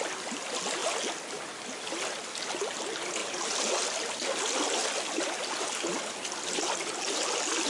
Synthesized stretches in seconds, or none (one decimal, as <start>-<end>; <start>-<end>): none